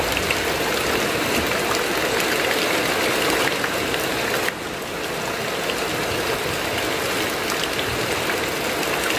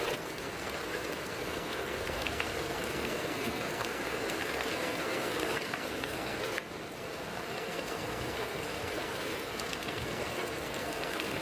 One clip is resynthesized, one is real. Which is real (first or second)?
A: first